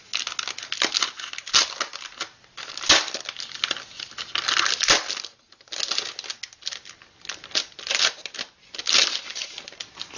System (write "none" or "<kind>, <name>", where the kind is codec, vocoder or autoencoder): none